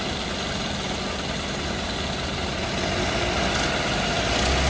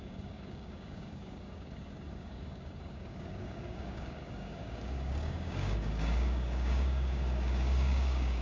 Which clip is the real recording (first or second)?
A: first